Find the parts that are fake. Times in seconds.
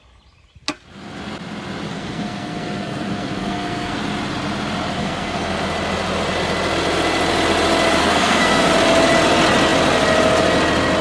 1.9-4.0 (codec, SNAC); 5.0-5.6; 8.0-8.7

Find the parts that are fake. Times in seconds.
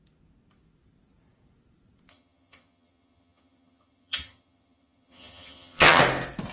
2.1-6.0 (vocoder, HiFi-GAN)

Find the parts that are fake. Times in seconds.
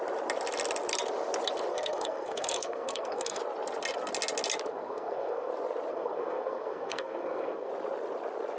1.7-3.4 (codec, SNAC); 4.7-5.5; 5.9-7.7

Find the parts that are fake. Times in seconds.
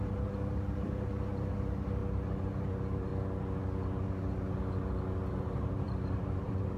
0.0-2.0 (vocoder, BigVGAN v2); 2.5-3.1; 5.3-6.8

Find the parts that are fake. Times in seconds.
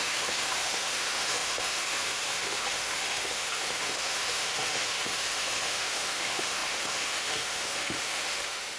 0.0-8.8 (autoencoder, DAC-VAE)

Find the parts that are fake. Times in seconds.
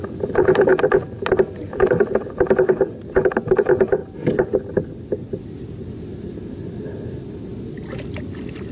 0.0-0.7 (vocoder, BigVGAN v2); 2.2-8.7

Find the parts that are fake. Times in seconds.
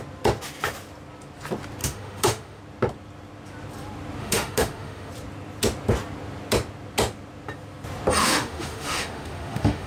1.8-2.6 (autoencoder, DAC-VAE); 4.2-5.1; 8.2-9.9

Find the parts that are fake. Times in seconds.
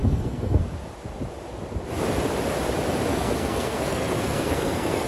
0.0-0.6 (codec, SNAC); 3.1-5.1